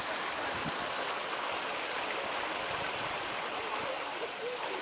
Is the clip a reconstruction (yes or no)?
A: no